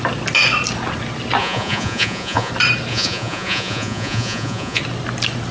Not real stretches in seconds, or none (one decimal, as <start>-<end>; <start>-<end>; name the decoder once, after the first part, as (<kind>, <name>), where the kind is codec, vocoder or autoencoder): 1.4-2.5 (vocoder, Vocos); 2.9-4.8